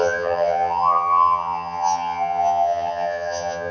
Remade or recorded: remade